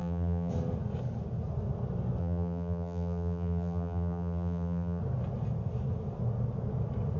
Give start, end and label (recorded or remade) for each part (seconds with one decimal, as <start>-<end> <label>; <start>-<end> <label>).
0.0-0.5 remade; 0.5-2.2 recorded; 2.2-5.0 remade; 5.0-7.2 recorded